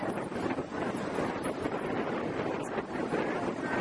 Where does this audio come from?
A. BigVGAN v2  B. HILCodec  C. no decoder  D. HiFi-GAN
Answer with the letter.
C